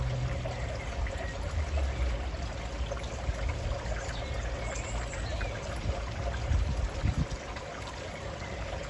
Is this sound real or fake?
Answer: real